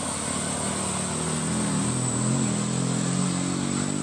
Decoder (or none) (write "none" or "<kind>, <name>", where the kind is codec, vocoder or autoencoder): none